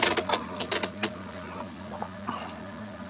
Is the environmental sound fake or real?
fake